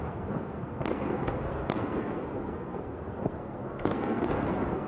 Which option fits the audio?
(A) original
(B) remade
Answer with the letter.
B